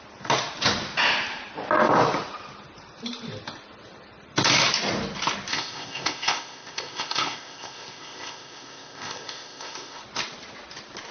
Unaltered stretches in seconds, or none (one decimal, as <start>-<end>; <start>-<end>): 0.0-5.5; 10.0-11.1